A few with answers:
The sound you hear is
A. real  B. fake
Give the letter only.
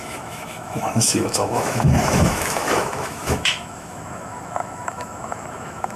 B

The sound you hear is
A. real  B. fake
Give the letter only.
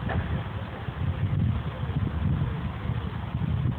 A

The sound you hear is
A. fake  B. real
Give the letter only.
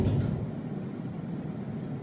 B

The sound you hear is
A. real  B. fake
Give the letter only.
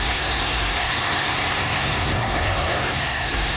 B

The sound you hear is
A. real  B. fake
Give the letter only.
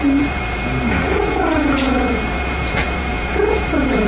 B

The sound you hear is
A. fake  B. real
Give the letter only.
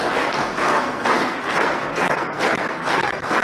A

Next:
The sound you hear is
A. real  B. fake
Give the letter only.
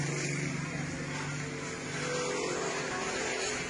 A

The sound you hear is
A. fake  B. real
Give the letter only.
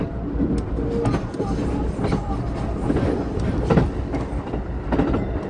B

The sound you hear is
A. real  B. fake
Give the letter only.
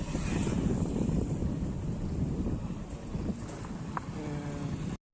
A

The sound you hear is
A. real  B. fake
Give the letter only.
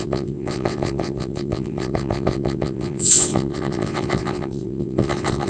B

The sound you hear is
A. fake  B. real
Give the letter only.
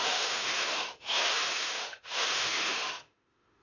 A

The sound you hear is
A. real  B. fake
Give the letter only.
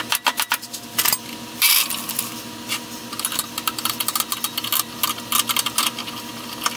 A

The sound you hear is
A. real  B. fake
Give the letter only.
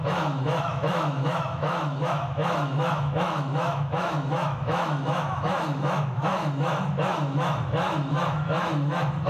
B